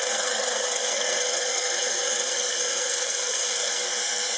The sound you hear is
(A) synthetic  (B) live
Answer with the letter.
A